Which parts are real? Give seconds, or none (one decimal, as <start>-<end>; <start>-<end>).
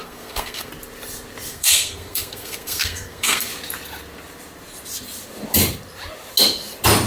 0.7-1.5; 3.5-7.1